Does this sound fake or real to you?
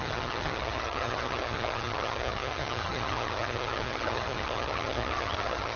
fake